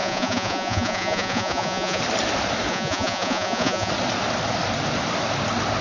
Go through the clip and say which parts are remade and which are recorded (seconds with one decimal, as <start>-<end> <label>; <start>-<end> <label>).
0.0-2.0 remade; 2.0-2.7 recorded; 2.7-3.9 remade; 3.9-5.8 recorded